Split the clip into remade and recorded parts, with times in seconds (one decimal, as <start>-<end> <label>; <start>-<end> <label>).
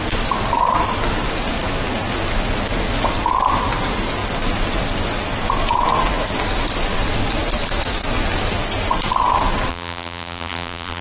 0.0-9.7 recorded; 9.7-11.0 remade